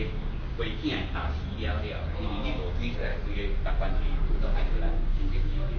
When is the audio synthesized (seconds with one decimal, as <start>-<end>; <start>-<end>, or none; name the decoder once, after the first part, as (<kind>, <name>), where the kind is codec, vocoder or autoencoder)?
0.0-1.4 (codec, DAC); 2.0-3.1; 3.9-5.8